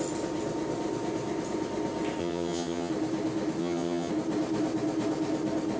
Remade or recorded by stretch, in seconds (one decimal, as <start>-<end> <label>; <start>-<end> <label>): 0.0-2.2 recorded; 2.2-2.9 remade; 2.9-3.6 recorded; 3.6-4.1 remade; 4.1-5.8 recorded